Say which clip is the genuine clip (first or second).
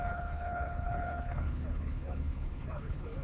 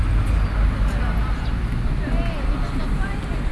second